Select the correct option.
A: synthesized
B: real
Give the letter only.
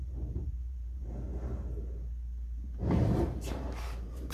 A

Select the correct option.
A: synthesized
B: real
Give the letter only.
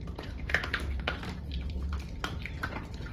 A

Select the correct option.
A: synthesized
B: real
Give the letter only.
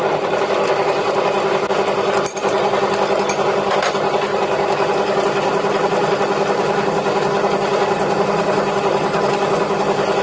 B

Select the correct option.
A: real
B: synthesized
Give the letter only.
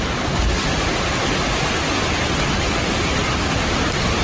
A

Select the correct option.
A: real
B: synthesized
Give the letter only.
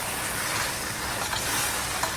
A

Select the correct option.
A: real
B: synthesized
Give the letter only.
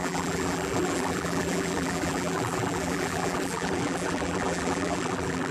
B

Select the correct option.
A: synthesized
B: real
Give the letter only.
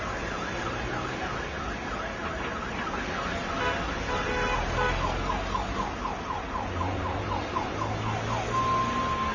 B